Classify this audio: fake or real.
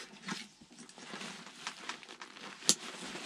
real